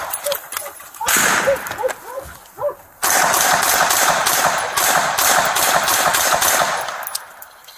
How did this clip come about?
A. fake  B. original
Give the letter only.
B